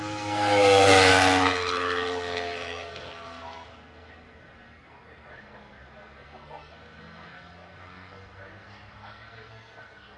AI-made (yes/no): yes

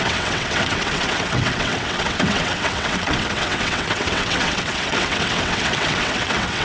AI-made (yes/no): yes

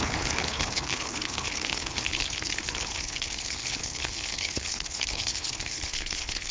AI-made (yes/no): yes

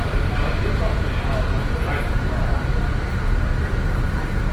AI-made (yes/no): no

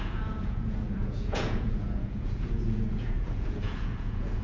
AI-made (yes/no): yes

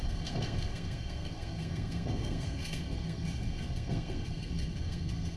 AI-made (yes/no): yes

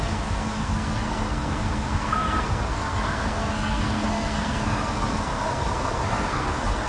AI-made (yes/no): yes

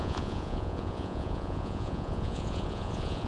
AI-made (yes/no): yes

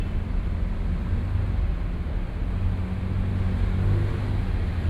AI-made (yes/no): no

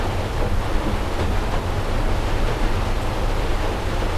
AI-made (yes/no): no